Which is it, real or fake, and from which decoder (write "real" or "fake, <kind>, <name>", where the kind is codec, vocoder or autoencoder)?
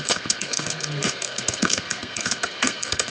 fake, codec, SNAC